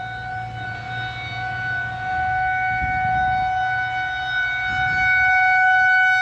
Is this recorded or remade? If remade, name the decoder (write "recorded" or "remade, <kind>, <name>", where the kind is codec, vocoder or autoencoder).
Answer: recorded